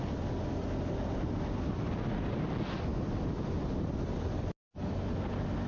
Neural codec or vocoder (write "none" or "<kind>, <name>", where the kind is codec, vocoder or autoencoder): none